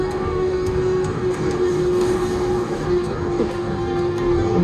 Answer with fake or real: fake